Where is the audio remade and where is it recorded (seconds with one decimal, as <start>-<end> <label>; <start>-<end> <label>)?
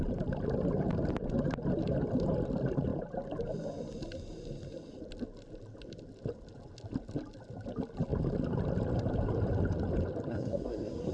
0.0-10.3 recorded; 10.3-11.1 remade